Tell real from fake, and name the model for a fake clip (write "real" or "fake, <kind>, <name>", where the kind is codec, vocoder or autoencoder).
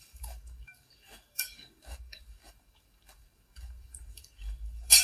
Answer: fake, codec, DAC